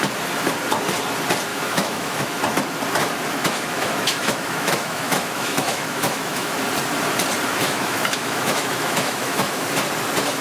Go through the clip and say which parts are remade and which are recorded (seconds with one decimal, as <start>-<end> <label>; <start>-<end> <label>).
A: 0.0-1.5 recorded; 1.5-2.4 remade; 2.4-3.4 recorded; 3.4-6.6 remade; 6.6-7.6 recorded; 7.6-9.6 remade; 9.6-10.4 recorded